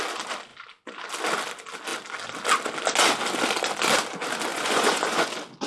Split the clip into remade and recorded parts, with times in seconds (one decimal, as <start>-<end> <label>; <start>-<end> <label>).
0.0-4.5 recorded; 4.5-5.3 remade; 5.3-5.7 recorded